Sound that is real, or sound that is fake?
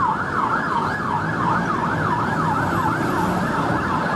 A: real